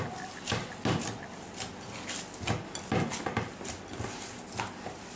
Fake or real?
real